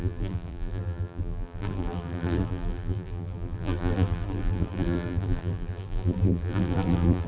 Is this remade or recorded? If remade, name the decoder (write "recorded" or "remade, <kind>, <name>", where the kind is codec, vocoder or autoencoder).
remade, vocoder, BigVGAN v2